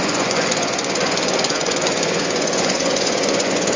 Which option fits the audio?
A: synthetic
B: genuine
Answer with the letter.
A